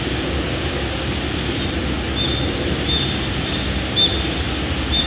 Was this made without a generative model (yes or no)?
yes